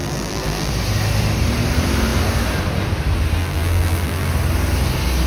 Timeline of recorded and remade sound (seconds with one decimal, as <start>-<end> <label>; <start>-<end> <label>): 0.0-0.7 remade; 0.7-3.4 recorded; 3.4-4.3 remade; 4.3-5.3 recorded

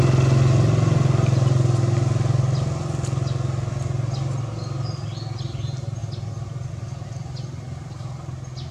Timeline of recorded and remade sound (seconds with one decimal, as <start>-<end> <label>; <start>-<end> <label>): 0.0-8.7 recorded

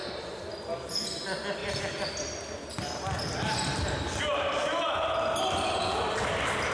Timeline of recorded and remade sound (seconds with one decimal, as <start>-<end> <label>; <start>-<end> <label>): 0.0-6.7 recorded

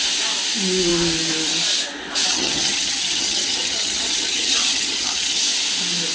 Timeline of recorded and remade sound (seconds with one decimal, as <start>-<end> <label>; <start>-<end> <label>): 0.0-2.3 recorded; 2.3-5.4 remade; 5.4-6.1 recorded

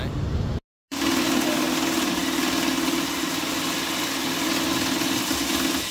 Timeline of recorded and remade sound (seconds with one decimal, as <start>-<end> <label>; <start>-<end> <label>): 0.0-5.9 recorded

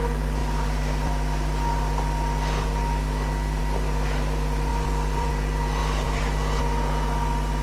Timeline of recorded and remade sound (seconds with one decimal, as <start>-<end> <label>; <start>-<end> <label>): 0.0-4.7 recorded; 4.7-5.3 remade; 5.3-5.8 recorded; 5.8-6.6 remade; 6.6-7.6 recorded

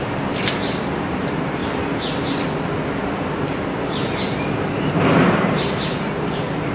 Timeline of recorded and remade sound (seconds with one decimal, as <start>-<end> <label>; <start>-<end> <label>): 0.0-1.6 remade; 1.6-4.7 recorded; 4.7-6.7 remade

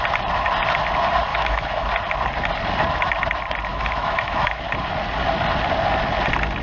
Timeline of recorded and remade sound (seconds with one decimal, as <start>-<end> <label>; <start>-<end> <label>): 0.0-1.3 recorded; 1.3-1.9 remade; 1.9-3.7 recorded; 3.7-4.6 remade; 4.6-6.6 recorded